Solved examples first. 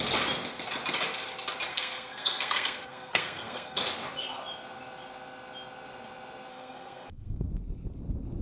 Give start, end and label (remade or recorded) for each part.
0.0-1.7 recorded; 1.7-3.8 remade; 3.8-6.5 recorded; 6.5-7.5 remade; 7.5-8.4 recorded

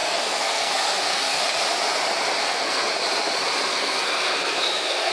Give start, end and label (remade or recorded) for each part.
0.0-1.4 remade; 1.4-2.4 recorded; 2.4-2.9 remade; 2.9-3.7 recorded; 3.7-5.1 remade

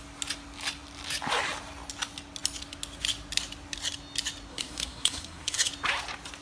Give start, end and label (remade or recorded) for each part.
0.0-4.5 recorded; 4.5-5.7 remade; 5.7-6.4 recorded

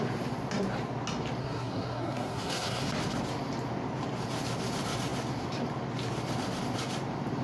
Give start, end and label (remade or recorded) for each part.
0.0-1.4 recorded; 1.4-2.9 remade; 2.9-7.4 recorded